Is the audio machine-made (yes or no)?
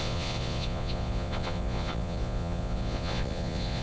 yes